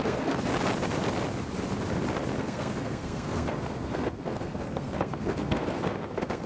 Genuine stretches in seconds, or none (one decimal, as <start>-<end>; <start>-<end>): 0.5-2.4